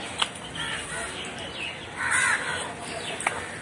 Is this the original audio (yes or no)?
yes